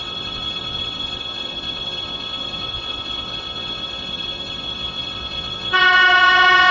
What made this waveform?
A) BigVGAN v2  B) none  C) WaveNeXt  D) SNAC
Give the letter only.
C